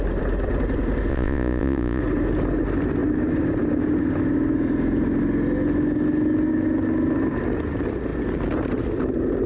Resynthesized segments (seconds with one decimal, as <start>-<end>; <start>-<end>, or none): 1.1-2.0